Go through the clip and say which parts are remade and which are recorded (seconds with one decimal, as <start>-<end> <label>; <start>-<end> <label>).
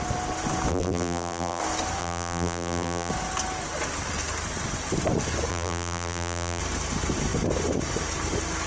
0.0-0.7 recorded; 0.7-1.6 remade; 1.6-2.0 recorded; 2.0-3.1 remade; 3.1-5.5 recorded; 5.5-6.6 remade; 6.6-8.7 recorded